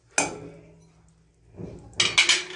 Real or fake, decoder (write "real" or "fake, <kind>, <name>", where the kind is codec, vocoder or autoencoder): real